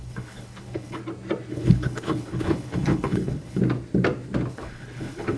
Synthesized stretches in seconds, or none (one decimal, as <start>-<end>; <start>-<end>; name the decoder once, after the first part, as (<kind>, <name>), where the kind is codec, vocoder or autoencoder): 0.0-1.0 (codec, HILCodec); 1.5-3.6; 4.5-5.4